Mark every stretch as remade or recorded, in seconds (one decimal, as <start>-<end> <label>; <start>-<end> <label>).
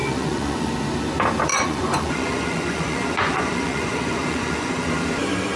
0.0-0.7 remade; 0.7-1.5 recorded; 1.5-4.9 remade; 4.9-5.6 recorded